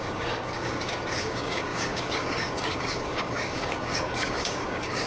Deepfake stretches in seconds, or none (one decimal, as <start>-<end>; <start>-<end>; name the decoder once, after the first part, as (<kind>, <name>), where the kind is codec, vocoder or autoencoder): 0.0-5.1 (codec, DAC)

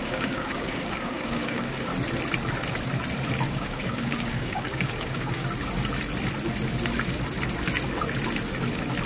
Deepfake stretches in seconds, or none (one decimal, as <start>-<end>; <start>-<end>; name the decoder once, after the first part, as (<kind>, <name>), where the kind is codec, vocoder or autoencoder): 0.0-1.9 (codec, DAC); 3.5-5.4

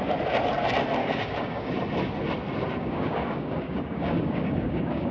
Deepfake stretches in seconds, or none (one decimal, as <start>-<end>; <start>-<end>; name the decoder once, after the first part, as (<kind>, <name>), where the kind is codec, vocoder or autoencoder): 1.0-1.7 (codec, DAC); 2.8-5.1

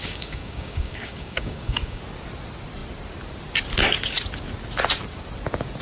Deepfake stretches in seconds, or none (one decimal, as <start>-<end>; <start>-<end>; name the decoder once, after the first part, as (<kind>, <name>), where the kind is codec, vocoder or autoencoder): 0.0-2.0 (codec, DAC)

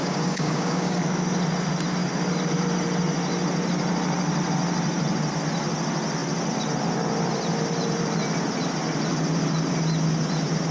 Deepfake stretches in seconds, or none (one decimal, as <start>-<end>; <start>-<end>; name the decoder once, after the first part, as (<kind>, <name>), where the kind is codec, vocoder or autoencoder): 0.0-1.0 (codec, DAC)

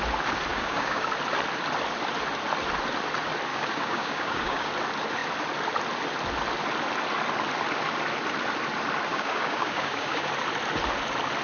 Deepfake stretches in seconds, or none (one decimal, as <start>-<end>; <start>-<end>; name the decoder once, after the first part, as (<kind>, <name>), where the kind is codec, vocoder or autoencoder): 0.5-1.1 (codec, DAC); 3.5-4.7; 9.1-10.3

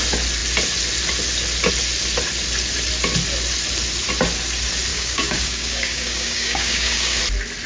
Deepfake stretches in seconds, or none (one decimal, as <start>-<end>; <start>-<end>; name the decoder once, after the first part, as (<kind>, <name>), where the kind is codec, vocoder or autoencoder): 4.9-7.2 (codec, DAC)